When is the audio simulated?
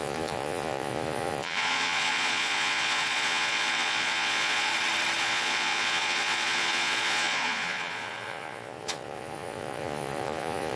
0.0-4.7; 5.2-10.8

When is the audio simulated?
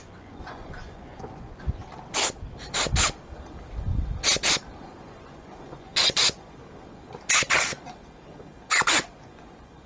0.0-1.8; 4.8-6.6; 8.7-9.9